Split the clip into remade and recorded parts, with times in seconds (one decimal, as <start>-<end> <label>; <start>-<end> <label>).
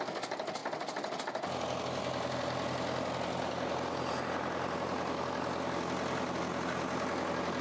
0.0-7.6 recorded